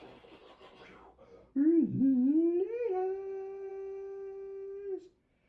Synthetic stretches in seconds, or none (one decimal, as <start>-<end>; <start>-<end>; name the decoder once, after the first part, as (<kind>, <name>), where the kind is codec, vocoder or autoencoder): none